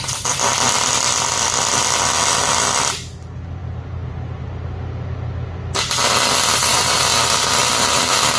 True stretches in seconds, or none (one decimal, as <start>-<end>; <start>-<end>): 0.0-8.4